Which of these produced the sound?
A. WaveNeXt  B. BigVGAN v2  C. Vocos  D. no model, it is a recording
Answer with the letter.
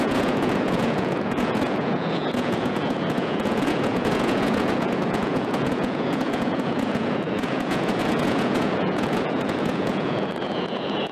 C